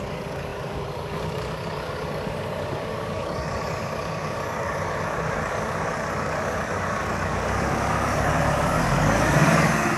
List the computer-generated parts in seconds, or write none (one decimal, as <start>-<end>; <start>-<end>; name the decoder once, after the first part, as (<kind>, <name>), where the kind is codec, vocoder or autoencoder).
0.0-10.0 (codec, DAC)